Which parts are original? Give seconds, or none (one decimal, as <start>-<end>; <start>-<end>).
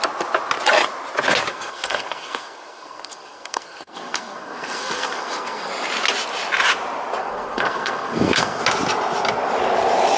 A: 0.0-1.5; 5.7-7.2; 8.6-10.2